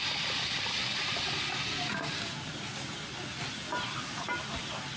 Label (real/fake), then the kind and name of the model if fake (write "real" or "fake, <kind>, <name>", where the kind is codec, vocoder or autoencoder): real